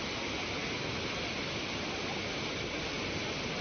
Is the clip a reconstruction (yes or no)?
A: no